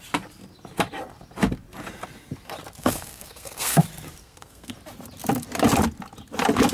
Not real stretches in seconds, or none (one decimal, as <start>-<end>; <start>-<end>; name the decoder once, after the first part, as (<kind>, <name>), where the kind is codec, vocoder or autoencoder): 2.8-3.8 (codec, SNAC); 4.2-4.7